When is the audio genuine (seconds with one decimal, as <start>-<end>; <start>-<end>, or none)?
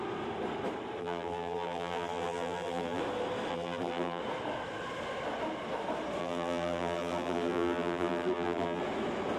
0.0-1.0; 3.0-3.5; 4.2-6.2; 8.8-9.4